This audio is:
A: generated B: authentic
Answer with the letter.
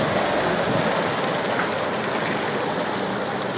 B